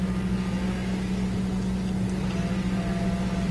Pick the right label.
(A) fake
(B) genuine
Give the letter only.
B